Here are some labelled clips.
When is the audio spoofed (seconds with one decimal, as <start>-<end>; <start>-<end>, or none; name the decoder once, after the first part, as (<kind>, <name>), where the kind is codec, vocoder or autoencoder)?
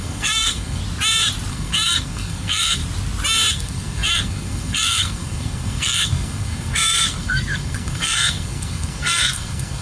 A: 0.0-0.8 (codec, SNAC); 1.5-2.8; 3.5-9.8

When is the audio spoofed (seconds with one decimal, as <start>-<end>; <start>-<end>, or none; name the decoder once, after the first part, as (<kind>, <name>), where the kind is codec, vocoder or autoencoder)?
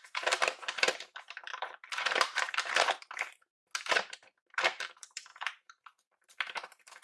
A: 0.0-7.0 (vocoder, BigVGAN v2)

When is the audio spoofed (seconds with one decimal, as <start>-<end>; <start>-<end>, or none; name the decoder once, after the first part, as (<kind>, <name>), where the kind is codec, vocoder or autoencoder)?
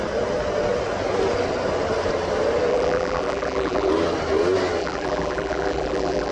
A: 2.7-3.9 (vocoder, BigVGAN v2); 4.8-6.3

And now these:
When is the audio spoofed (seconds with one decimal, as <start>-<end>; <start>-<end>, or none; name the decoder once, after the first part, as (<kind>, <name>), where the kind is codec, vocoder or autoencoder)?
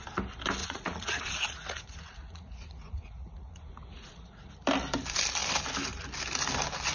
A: 0.6-4.5 (vocoder, Vocos)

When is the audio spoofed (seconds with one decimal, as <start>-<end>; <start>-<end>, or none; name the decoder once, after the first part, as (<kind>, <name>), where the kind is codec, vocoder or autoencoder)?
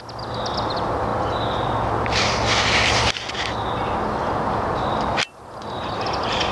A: none